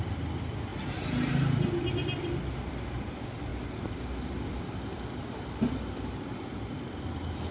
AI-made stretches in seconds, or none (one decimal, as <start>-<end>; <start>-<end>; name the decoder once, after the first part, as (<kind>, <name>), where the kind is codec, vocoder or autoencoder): 0.0-0.7 (vocoder, BigVGAN v2); 1.9-7.5